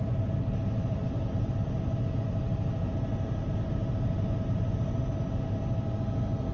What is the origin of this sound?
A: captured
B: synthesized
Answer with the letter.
A